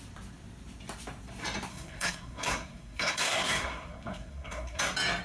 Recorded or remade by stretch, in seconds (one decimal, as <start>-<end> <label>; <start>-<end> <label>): 0.0-1.7 recorded; 1.7-4.8 remade; 4.8-5.2 recorded